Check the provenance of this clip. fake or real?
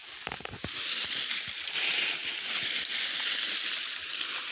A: real